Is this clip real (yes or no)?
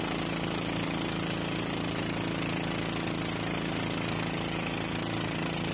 yes